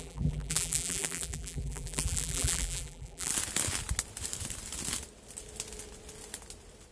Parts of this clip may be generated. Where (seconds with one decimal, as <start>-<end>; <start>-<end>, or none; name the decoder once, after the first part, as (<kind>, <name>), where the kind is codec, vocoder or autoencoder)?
0.0-3.3 (vocoder, BigVGAN v2)